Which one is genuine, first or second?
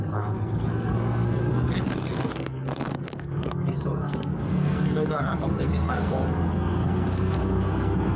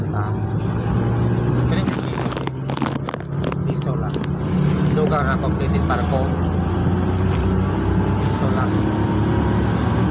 second